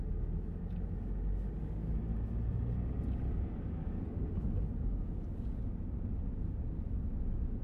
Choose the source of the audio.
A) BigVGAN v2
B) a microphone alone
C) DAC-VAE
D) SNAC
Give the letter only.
B